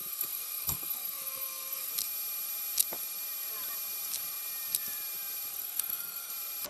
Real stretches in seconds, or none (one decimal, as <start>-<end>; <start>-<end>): 1.9-5.5; 6.3-6.7